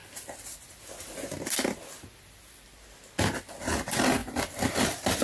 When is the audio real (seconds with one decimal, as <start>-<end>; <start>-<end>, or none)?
2.6-4.2